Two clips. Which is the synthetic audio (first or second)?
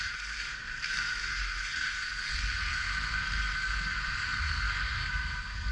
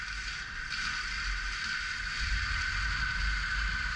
first